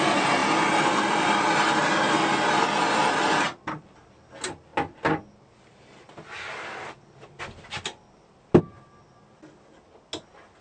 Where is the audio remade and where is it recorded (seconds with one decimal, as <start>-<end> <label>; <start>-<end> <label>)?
0.0-10.6 recorded